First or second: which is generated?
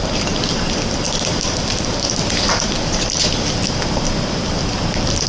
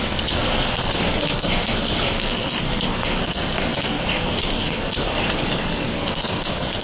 second